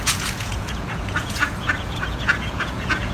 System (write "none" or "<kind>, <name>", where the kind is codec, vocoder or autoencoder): vocoder, Vocos